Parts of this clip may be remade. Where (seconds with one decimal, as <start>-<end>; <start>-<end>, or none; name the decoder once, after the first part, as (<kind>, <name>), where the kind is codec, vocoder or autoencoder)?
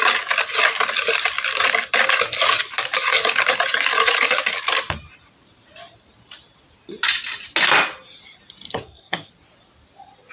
8.7-9.3 (codec, SNAC)